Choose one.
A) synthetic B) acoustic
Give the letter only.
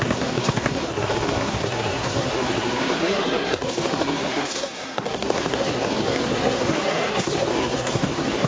A